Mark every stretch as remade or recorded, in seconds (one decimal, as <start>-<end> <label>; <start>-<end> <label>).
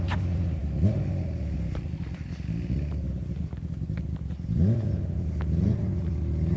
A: 0.0-6.6 recorded